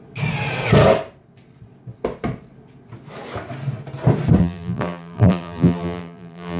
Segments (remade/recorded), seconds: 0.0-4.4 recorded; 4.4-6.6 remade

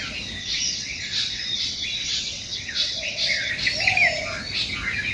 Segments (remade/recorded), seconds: 0.0-0.4 recorded; 0.4-3.5 remade; 3.5-5.1 recorded

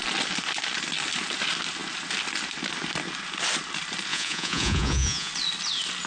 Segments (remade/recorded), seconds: 0.0-4.1 recorded; 4.1-5.3 remade; 5.3-6.1 recorded